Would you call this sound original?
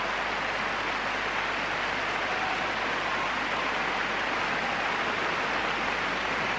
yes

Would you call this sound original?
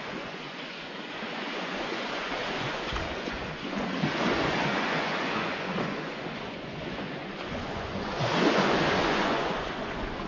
no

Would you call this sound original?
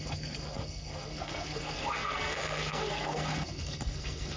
no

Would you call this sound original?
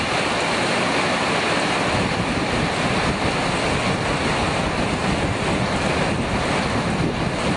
yes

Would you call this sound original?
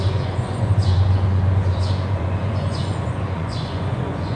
no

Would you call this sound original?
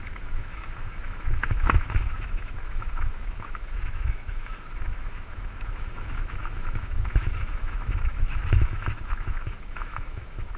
no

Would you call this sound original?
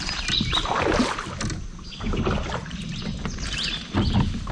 yes